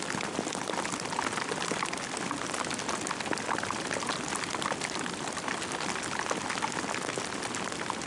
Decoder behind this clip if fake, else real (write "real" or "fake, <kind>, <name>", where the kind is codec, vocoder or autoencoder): real